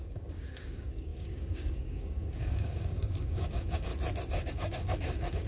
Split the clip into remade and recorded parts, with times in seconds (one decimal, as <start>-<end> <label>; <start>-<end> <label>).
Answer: 0.0-3.9 remade; 3.9-4.5 recorded; 4.5-5.5 remade